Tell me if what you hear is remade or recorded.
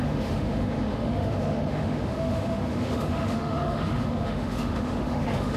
remade